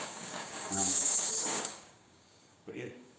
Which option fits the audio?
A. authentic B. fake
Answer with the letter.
B